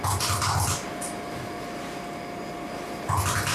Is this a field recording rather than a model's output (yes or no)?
yes